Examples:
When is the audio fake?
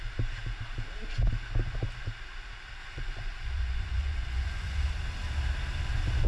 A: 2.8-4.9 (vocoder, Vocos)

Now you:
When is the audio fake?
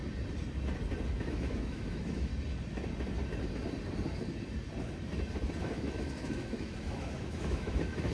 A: 1.1-2.3 (autoencoder, DAC-VAE); 5.6-8.1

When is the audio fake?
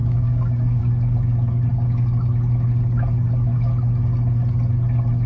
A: 0.0-0.8 (codec, DAC)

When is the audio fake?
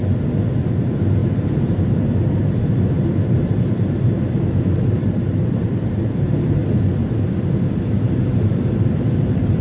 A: 0.7-6.6 (vocoder, BigVGAN v2); 7.4-9.6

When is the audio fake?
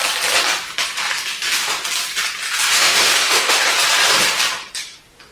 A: 2.7-3.6 (autoencoder, DAC-VAE)